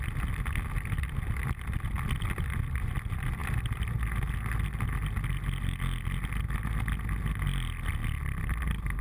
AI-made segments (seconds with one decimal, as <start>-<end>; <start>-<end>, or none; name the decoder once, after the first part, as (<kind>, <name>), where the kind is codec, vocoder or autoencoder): none